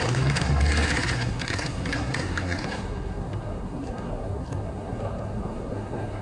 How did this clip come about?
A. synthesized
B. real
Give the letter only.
A